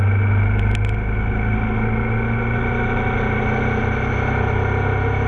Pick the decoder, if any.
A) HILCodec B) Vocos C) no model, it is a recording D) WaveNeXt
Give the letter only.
C